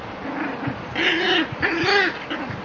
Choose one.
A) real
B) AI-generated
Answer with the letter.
A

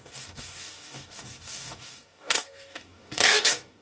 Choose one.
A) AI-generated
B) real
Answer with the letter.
A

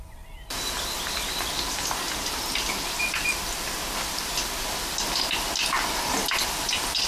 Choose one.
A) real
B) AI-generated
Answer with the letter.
A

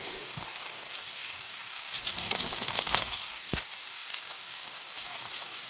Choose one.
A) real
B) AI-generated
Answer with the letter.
B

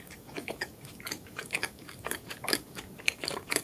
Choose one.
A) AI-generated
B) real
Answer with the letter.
A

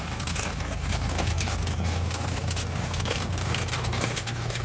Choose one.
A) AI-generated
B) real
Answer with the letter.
A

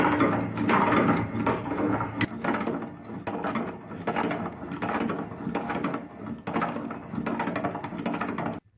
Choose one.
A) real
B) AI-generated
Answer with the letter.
A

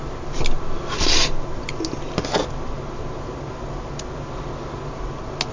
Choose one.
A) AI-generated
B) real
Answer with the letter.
B